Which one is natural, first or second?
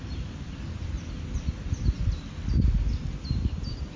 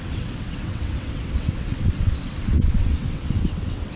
first